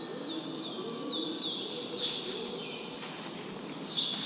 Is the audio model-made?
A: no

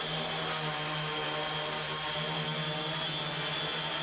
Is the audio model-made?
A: no